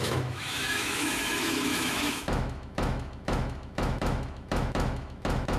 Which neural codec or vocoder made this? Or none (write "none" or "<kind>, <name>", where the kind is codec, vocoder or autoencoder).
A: autoencoder, DAC-VAE